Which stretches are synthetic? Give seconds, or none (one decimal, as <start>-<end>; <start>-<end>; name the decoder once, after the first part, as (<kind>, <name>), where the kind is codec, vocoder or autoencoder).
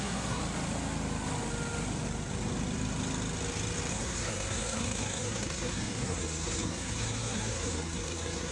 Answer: 0.0-0.4 (codec, SNAC); 3.9-8.5